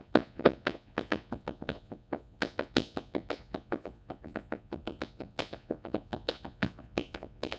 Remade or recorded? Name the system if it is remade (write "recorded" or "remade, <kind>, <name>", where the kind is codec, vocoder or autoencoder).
remade, vocoder, Vocos